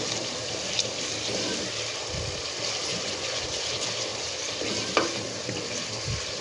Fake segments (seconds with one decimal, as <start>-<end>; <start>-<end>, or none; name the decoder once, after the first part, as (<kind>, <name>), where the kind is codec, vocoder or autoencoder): 2.9-3.4 (vocoder, Vocos)